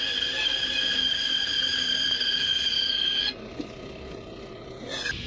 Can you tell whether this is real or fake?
real